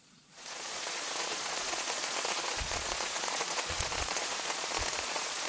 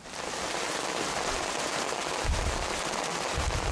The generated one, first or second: first